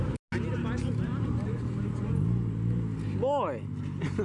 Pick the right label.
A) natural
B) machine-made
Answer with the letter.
A